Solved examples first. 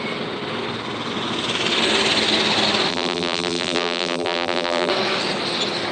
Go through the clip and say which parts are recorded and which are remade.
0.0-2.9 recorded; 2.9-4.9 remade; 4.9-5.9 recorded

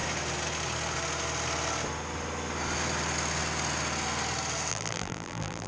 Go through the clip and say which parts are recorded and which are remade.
0.0-4.7 recorded; 4.7-5.7 remade

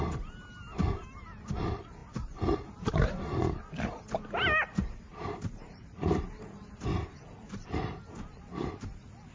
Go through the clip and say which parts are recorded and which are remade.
0.0-5.1 recorded; 5.1-8.0 remade; 8.0-9.3 recorded

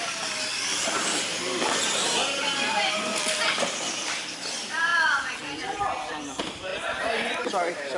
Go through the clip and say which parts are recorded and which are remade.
0.0-8.0 remade

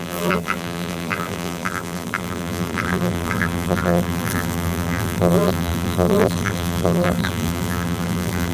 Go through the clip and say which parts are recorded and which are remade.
0.0-8.5 remade

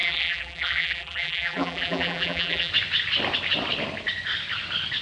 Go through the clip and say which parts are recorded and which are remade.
0.0-2.7 remade; 2.7-5.0 recorded

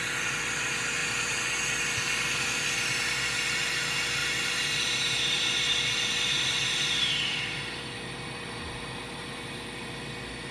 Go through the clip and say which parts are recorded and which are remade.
0.0-4.2 recorded; 4.2-7.4 remade; 7.4-10.5 recorded